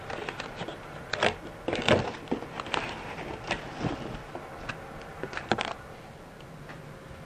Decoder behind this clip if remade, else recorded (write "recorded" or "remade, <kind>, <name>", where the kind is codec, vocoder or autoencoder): recorded